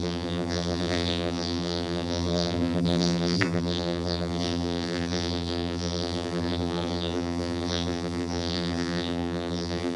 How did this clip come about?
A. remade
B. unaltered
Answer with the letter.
A